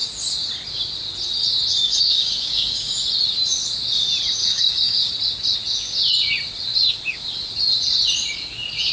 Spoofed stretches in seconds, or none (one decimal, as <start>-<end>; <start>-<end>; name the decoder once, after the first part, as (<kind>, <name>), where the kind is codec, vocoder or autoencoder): 1.7-3.0 (codec, DAC); 4.4-5.1